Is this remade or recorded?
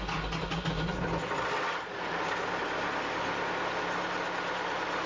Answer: recorded